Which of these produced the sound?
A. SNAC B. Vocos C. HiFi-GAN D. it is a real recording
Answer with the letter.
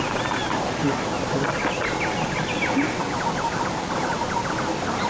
D